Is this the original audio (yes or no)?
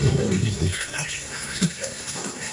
no